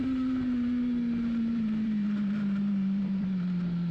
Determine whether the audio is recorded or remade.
remade